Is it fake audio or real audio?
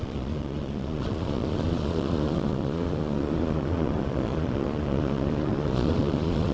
fake